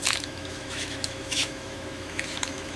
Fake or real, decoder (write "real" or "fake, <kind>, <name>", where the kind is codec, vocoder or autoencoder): fake, autoencoder, DAC-VAE